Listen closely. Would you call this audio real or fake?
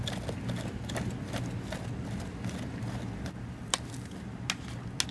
real